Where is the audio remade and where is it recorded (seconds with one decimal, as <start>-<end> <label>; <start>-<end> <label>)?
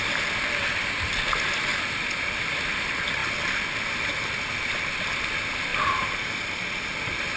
0.0-1.7 recorded; 1.7-2.5 remade; 2.5-5.7 recorded; 5.7-6.3 remade; 6.3-7.4 recorded